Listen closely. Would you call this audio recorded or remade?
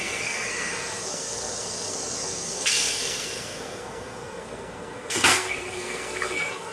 remade